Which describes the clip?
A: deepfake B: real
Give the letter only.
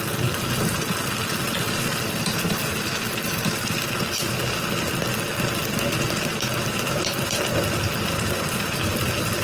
B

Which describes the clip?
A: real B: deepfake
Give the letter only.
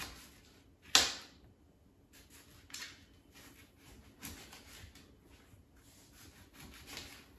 A